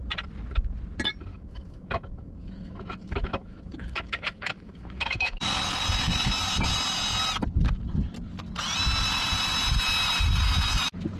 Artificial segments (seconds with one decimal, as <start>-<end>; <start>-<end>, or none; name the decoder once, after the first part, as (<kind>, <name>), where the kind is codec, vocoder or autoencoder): 1.3-5.4 (autoencoder, DAC-VAE)

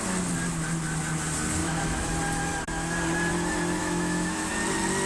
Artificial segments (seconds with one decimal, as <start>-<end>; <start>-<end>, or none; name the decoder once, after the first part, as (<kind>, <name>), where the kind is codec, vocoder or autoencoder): 1.6-2.1 (autoencoder, DAC-VAE); 3.8-4.5

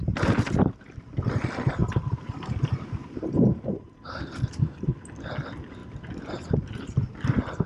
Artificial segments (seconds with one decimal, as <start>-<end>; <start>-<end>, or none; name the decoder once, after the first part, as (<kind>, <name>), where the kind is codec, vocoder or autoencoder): 1.8-4.2 (vocoder, BigVGAN v2)

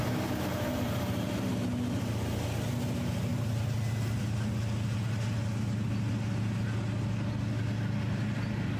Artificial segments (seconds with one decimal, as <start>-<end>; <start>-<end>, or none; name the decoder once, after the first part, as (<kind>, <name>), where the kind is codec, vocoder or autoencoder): 0.0-1.5 (vocoder, BigVGAN v2)

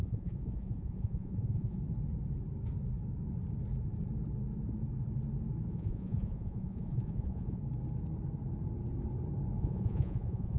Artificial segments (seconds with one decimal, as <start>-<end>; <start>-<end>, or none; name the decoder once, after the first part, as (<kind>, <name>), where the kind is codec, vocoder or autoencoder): 0.0-1.8 (vocoder, Vocos); 5.7-7.6; 9.6-10.6

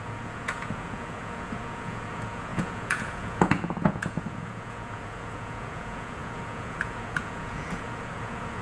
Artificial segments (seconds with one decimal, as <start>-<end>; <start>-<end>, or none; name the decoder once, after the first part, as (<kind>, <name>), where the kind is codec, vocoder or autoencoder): 0.0-8.6 (vocoder, Vocos)

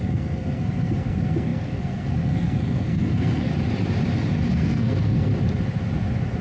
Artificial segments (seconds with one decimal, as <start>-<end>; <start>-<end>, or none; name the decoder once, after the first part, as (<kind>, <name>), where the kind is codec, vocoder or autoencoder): 0.0-3.5 (codec, SNAC); 4.5-5.3